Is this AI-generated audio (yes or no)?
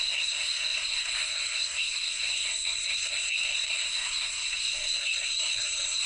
yes